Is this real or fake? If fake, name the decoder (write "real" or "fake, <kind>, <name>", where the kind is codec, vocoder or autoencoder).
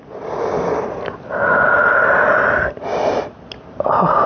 real